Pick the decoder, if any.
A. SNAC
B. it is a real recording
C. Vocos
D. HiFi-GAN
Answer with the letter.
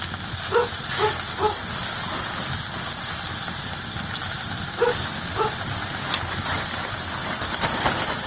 B